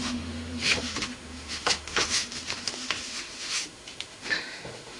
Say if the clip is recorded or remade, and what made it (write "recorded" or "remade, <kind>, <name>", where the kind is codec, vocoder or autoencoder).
remade, autoencoder, DAC-VAE